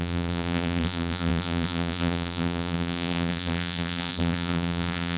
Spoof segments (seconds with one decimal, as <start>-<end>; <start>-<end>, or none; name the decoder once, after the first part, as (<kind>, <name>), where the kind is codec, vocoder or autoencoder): 0.0-5.2 (vocoder, BigVGAN v2)